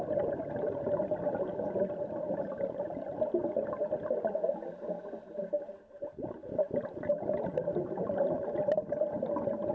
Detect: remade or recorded recorded